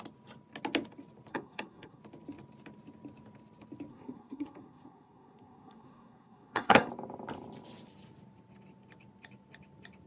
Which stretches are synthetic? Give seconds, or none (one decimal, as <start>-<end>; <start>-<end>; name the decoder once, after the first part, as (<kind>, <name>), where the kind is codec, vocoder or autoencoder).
1.3-2.0 (codec, SNAC); 3.9-6.9